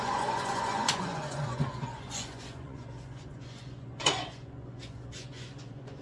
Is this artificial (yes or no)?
yes